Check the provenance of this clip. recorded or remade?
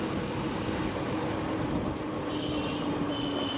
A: recorded